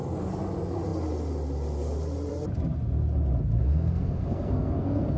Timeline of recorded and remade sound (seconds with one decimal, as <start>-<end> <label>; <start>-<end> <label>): 0.0-3.6 recorded; 3.6-5.2 remade